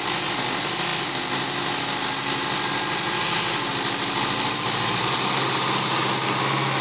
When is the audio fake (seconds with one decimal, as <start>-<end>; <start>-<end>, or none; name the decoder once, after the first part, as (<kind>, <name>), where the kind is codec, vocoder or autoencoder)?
none